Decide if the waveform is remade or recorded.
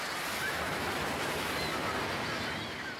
recorded